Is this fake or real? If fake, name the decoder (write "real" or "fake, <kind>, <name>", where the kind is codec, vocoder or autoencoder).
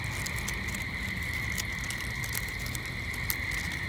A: real